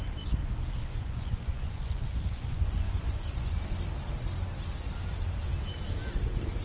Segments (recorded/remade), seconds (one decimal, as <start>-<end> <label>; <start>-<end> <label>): 0.0-0.8 recorded; 0.8-3.6 remade; 3.6-6.6 recorded